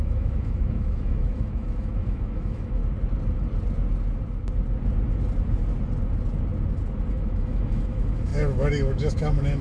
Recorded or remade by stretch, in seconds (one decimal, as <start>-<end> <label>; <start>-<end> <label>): 0.0-2.8 remade; 2.8-7.1 recorded; 7.1-9.6 remade